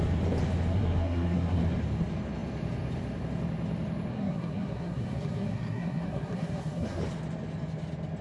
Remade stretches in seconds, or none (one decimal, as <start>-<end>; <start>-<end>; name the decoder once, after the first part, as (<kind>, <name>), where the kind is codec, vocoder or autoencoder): 0.7-1.6 (codec, SNAC); 4.1-7.0

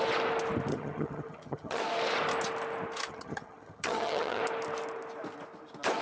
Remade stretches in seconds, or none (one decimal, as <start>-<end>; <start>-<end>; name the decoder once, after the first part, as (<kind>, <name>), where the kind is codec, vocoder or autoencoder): 0.7-1.8 (vocoder, HiFi-GAN); 3.1-4.4

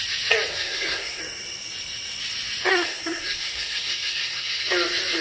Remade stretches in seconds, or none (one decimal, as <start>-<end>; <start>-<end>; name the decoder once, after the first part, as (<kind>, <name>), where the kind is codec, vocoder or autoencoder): 0.5-1.2 (codec, SNAC); 2.7-4.7

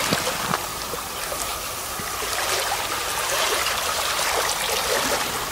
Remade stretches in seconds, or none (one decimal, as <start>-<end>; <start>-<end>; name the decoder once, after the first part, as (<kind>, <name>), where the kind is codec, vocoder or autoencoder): 0.7-4.0 (vocoder, BigVGAN v2)

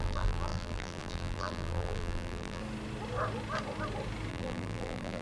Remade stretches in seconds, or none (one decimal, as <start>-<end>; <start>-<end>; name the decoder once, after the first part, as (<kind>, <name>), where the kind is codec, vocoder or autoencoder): 0.0-2.6 (vocoder, BigVGAN v2); 4.3-5.2

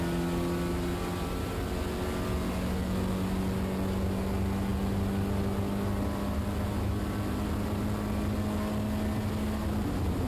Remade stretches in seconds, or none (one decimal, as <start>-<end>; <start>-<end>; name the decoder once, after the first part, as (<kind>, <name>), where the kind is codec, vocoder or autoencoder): none

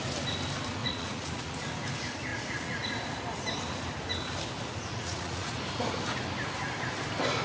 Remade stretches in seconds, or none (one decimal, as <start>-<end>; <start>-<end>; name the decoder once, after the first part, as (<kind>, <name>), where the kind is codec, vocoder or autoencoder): 0.8-1.6 (vocoder, Vocos); 2.3-2.9; 4.9-5.6